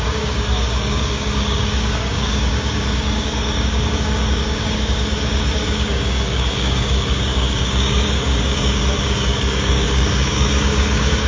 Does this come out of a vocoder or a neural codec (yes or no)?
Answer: yes